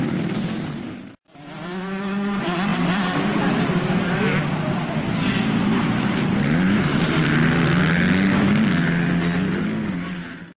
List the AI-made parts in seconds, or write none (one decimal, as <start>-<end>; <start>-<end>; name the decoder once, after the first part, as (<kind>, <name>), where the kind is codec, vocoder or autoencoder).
0.0-7.2 (vocoder, BigVGAN v2); 9.9-10.6